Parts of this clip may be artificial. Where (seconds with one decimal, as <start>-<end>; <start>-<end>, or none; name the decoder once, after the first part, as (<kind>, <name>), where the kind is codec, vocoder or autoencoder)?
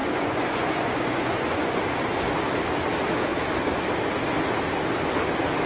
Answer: 0.0-1.8 (vocoder, Vocos)